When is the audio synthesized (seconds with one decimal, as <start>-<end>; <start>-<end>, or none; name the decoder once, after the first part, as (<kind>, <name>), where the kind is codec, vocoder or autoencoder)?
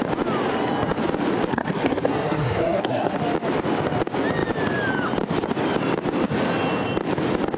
1.5-3.2 (codec, SNAC)